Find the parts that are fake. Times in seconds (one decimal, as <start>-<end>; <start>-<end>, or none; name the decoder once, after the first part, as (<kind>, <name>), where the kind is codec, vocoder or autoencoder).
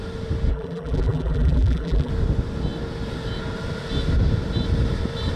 0.5-2.1 (vocoder, BigVGAN v2)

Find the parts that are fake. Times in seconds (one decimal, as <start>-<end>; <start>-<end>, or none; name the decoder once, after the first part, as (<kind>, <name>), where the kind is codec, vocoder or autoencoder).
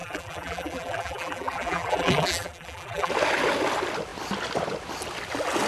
0.0-3.1 (vocoder, BigVGAN v2)